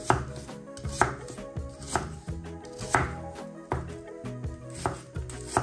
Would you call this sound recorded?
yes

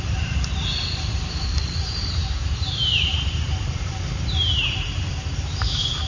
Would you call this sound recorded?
no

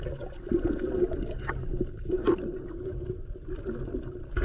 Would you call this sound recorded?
yes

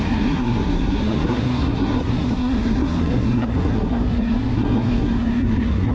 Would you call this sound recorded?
no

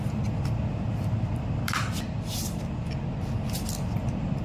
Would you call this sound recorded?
yes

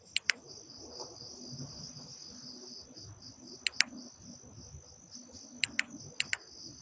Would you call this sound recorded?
yes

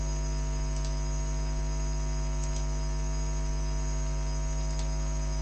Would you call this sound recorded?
yes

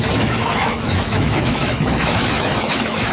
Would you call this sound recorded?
no